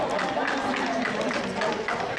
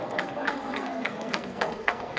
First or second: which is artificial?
second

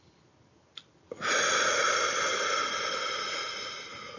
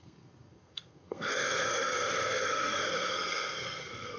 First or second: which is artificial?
second